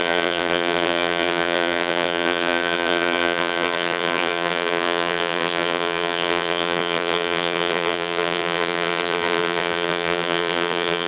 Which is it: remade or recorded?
remade